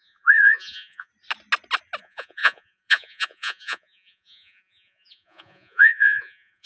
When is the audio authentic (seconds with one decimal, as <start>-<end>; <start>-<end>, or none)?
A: 1.1-2.0